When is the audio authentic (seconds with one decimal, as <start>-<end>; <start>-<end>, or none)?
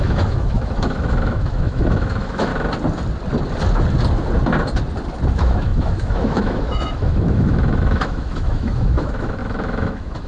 2.5-5.3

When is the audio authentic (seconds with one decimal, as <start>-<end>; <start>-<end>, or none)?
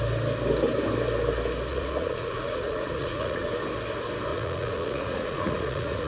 0.0-1.7; 3.5-4.3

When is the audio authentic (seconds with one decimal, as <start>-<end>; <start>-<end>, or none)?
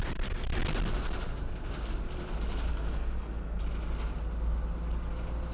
0.0-2.7; 3.6-5.5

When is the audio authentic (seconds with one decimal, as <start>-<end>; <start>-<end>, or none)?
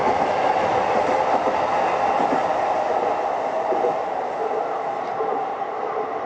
0.7-6.3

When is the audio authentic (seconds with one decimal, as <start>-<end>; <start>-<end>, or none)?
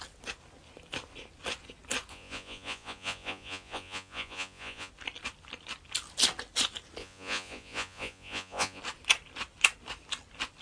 0.0-2.1; 4.9-7.0; 8.8-10.6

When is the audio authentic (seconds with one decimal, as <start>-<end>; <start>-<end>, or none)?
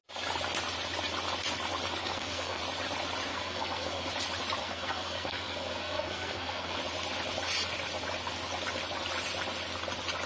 0.0-2.0; 2.6-3.3; 4.1-4.6; 6.8-10.3